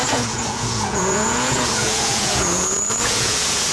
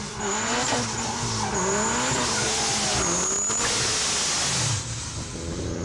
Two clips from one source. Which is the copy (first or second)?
first